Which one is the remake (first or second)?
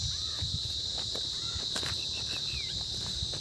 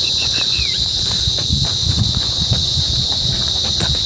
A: second